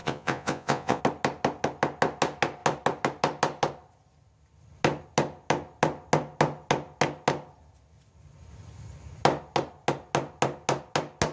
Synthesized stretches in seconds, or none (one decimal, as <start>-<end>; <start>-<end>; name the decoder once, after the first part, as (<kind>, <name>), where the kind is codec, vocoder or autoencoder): 0.0-1.0 (vocoder, Vocos)